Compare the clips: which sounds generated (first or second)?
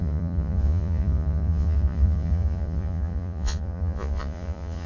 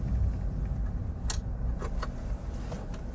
first